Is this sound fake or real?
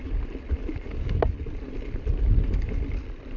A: real